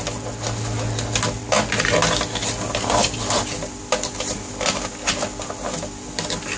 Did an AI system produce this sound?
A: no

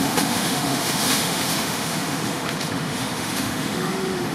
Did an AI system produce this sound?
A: yes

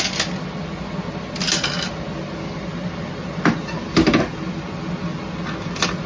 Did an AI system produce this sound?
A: no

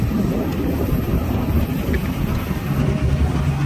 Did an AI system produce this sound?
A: no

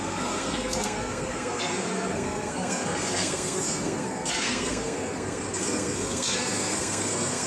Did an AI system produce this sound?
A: yes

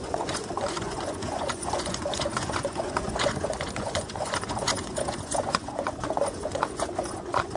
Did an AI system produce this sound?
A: yes